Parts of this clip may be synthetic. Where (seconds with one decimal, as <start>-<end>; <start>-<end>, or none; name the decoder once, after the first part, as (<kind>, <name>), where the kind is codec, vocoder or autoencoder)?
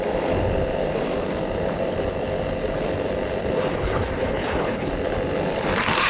3.7-4.9 (codec, HILCodec)